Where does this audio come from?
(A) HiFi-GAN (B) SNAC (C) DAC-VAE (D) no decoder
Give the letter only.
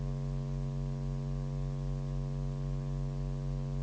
D